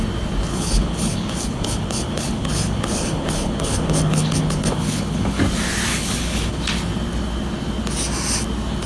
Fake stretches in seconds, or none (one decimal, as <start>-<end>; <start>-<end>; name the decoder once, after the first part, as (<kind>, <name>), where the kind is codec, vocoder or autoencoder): 0.5-5.4 (codec, HILCodec); 5.9-6.6